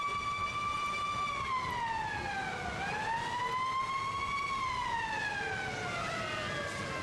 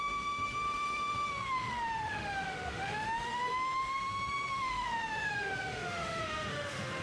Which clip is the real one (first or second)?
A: first